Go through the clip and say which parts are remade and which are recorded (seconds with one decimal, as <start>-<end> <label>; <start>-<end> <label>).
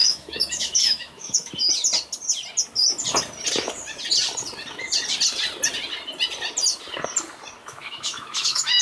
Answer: 0.0-1.5 remade; 1.5-7.6 recorded; 7.6-8.8 remade